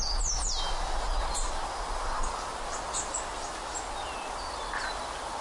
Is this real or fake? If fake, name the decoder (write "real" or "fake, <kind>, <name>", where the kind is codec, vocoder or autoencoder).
real